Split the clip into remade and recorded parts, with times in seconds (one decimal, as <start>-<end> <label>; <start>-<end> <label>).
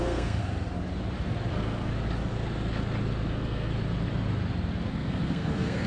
0.0-0.4 remade; 0.4-1.5 recorded; 1.5-1.9 remade; 1.9-3.3 recorded; 3.3-3.7 remade; 3.7-4.9 recorded; 4.9-5.9 remade